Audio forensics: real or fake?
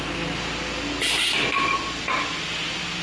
real